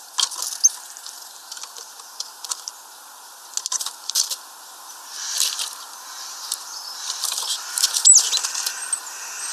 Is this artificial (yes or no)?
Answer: no